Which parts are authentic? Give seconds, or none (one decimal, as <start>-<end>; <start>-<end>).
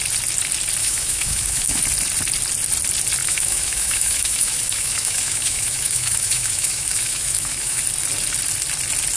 0.0-0.8; 1.8-3.2; 7.8-9.2